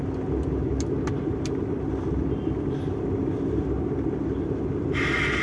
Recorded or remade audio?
recorded